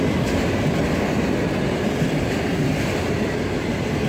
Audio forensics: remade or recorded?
recorded